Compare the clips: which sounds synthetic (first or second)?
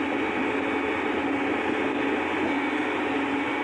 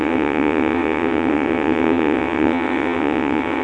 second